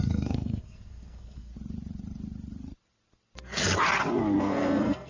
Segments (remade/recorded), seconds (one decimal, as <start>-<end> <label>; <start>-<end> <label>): 0.0-1.5 remade; 1.5-4.4 recorded; 4.4-5.1 remade